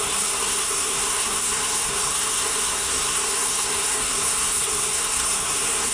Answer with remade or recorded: remade